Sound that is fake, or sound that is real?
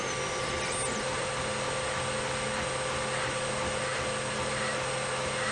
real